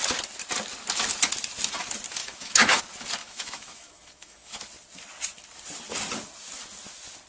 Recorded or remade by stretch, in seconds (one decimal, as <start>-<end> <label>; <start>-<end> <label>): 0.0-2.2 recorded; 2.2-2.8 remade; 2.8-3.2 recorded; 3.2-4.6 remade; 4.6-7.3 recorded